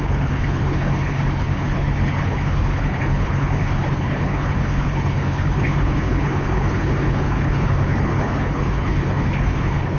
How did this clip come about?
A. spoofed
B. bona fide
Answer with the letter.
A